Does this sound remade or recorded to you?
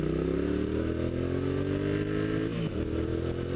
recorded